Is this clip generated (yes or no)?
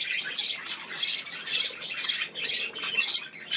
no